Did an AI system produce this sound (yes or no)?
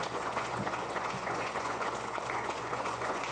yes